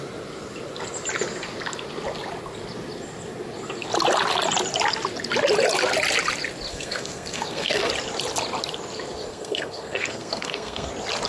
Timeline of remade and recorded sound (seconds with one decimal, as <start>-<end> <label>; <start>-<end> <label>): 0.0-6.7 recorded; 6.7-7.9 remade; 7.9-9.3 recorded; 9.3-10.9 remade; 10.9-11.3 recorded